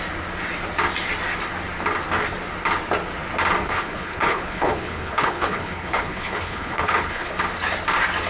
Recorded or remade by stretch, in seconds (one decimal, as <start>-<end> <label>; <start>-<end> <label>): 0.0-3.6 recorded; 3.6-7.3 remade; 7.3-8.3 recorded